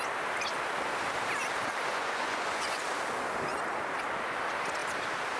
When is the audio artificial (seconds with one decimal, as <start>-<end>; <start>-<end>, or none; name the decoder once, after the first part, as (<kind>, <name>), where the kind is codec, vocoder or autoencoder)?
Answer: 1.9-2.8 (vocoder, Vocos)